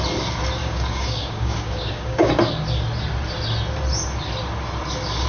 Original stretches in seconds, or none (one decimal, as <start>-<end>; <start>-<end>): 0.0-0.6; 2.3-5.3